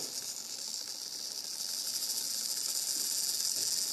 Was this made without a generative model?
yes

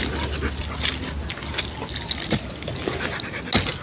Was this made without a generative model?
yes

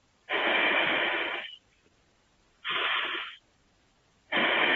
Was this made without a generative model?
yes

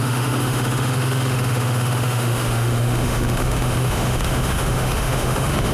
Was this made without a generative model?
no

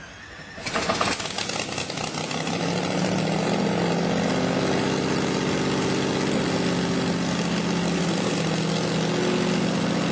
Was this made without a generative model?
yes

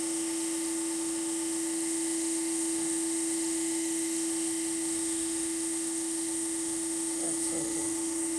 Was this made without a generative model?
no